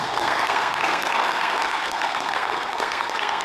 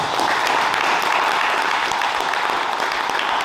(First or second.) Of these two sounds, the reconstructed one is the first